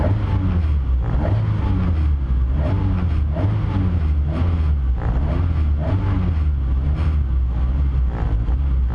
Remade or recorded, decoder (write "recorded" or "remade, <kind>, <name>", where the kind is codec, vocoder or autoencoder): recorded